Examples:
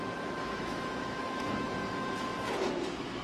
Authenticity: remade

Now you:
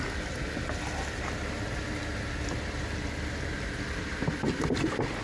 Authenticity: recorded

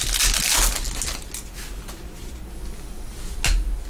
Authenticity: recorded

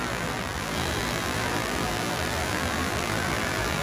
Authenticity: remade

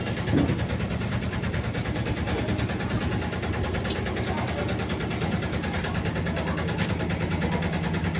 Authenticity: recorded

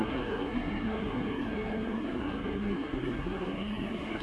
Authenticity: remade